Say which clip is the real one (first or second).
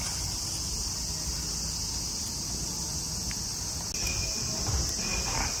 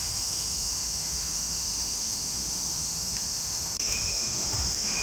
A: first